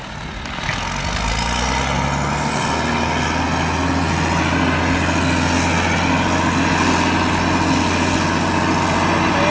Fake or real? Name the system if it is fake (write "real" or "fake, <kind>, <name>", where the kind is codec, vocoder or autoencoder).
real